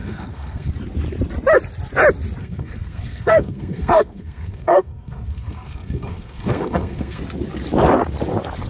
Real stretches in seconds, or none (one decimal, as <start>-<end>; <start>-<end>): 0.7-2.4; 7.2-8.7